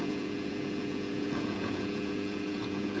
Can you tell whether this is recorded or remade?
remade